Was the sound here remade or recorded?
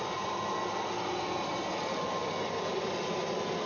recorded